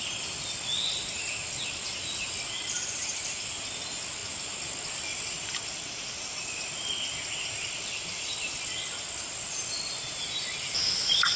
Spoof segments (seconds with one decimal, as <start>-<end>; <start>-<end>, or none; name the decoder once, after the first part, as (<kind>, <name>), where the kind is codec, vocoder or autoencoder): none